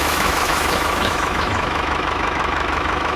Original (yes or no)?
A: no